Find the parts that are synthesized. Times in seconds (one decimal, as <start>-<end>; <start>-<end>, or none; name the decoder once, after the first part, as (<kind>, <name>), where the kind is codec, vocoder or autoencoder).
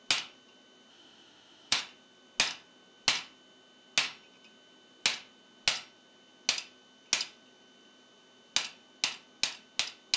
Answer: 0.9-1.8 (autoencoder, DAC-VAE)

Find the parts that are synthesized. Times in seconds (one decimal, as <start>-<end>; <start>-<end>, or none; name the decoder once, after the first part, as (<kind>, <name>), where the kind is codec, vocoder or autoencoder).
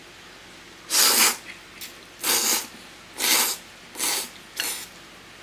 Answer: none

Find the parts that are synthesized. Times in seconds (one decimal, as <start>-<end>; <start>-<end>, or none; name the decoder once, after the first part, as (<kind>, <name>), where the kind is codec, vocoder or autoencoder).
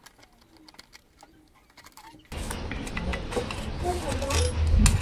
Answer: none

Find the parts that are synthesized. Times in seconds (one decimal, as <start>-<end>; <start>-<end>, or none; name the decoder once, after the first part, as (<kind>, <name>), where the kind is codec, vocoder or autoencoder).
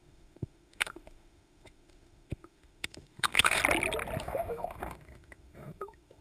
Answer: 0.0-3.6 (autoencoder, DAC-VAE); 4.2-6.2